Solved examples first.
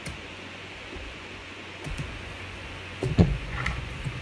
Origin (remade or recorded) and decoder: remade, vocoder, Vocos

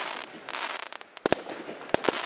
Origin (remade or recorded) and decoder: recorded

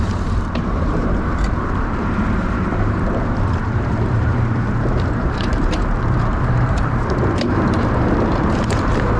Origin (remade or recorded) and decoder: remade, vocoder, BigVGAN v2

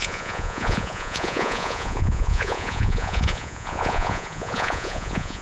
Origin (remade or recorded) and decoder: remade, vocoder, Vocos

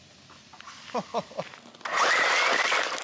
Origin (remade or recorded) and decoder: recorded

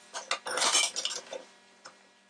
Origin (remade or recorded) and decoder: recorded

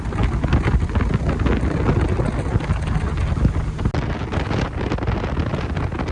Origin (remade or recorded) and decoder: recorded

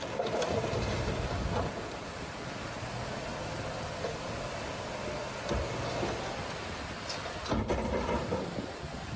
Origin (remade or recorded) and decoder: recorded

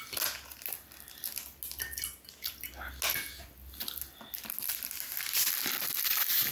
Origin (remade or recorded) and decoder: recorded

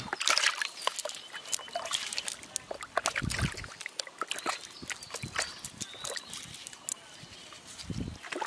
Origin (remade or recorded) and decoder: recorded